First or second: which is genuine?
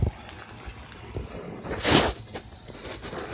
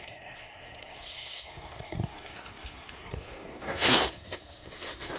first